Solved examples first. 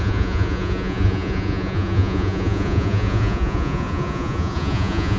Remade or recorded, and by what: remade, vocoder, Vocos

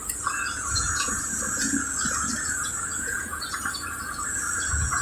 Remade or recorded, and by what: remade, vocoder, Vocos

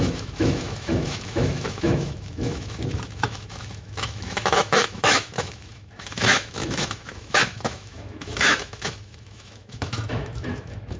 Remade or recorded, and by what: remade, autoencoder, DAC-VAE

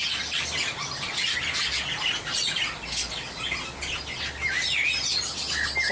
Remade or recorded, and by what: recorded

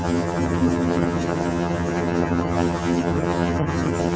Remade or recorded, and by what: remade, vocoder, HiFi-GAN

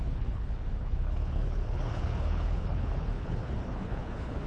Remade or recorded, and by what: remade, codec, HILCodec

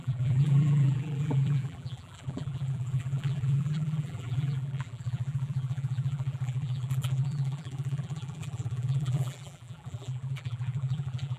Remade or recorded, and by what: remade, vocoder, BigVGAN v2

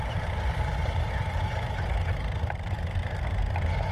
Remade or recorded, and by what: recorded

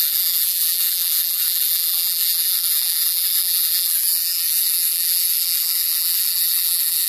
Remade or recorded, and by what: remade, vocoder, BigVGAN v2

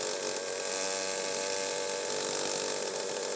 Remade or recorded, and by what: recorded